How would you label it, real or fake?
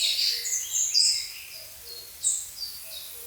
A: real